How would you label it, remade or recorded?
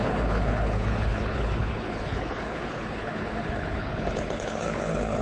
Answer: remade